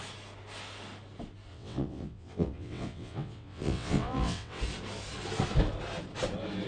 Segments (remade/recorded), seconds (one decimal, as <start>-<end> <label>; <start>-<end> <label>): 0.0-1.5 recorded; 1.5-4.6 remade; 4.6-6.7 recorded